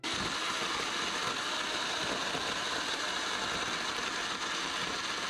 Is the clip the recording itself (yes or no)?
yes